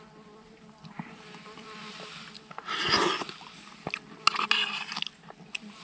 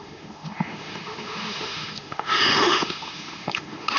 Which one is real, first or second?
first